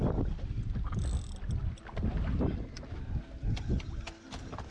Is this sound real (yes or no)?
yes